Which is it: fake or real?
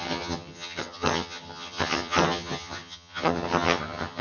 fake